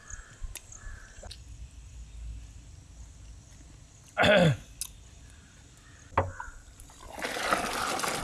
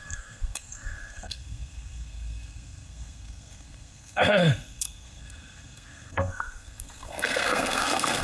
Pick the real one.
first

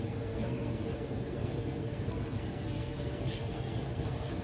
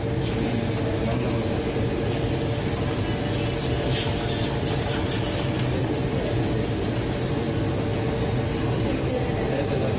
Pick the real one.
second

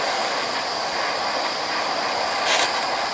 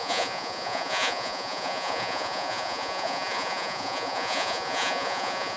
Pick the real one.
first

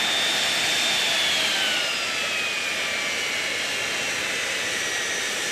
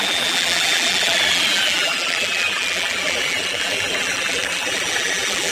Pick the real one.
first